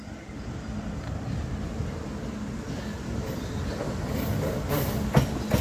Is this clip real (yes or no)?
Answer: yes